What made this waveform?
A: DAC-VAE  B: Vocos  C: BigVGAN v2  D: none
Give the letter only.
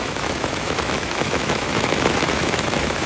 A